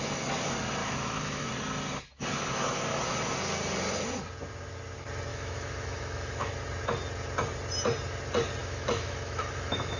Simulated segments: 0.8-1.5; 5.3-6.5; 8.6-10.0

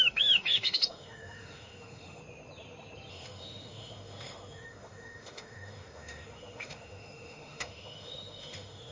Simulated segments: 0.0-2.2; 3.1-8.9

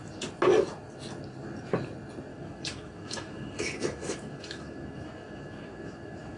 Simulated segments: 2.3-6.4

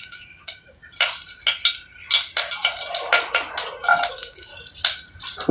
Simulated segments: 0.0-0.8; 4.1-4.5

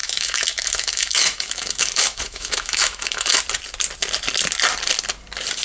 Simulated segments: 0.0-3.4